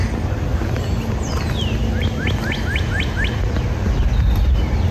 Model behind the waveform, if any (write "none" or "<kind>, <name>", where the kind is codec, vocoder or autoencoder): none